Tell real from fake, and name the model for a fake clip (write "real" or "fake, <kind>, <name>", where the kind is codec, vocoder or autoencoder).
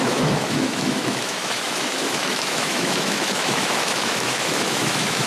fake, autoencoder, DAC-VAE